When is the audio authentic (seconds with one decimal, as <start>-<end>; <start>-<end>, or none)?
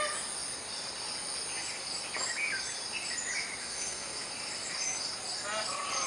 0.0-3.6; 4.3-6.1